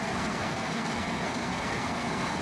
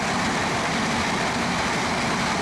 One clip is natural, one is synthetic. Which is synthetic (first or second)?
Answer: first